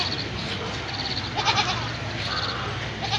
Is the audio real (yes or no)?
yes